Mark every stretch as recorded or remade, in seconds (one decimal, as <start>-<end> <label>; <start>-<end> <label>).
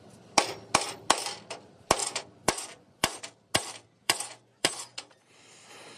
0.0-2.0 recorded; 2.0-3.2 remade; 3.2-4.0 recorded; 4.0-5.1 remade; 5.1-6.0 recorded